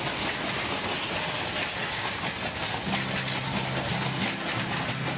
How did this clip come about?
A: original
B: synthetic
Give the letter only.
A